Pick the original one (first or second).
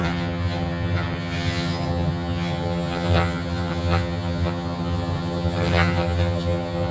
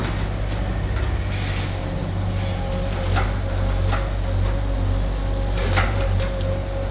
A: second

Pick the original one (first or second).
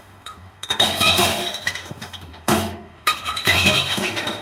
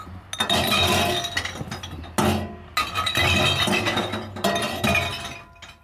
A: second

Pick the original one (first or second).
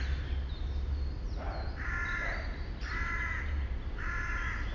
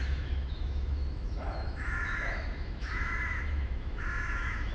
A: first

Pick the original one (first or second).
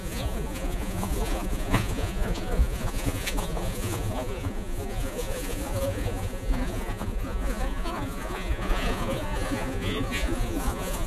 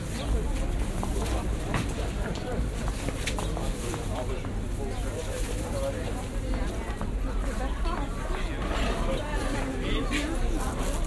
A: second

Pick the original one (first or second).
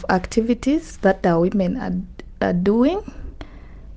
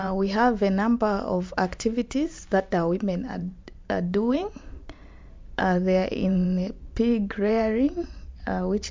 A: first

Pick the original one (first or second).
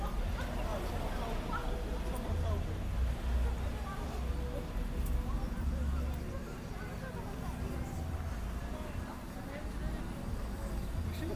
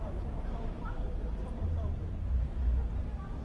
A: first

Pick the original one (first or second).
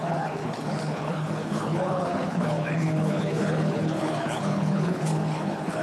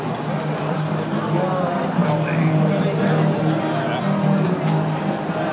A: second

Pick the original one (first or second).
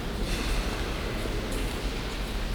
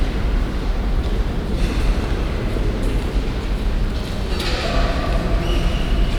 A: first